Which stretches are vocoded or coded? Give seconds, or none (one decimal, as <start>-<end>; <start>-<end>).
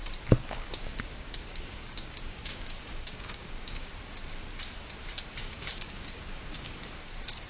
0.4-3.9; 5.4-6.9